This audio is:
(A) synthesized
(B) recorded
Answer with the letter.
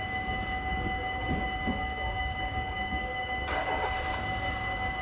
A